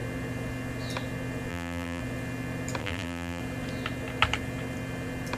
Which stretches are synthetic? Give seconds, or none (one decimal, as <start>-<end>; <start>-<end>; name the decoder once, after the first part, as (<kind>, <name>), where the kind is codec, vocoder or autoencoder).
1.5-2.0 (vocoder, BigVGAN v2); 2.8-3.4